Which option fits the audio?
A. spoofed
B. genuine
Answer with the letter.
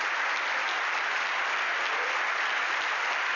B